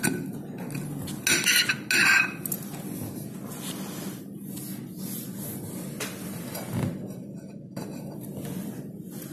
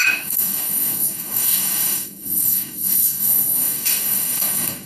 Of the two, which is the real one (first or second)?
first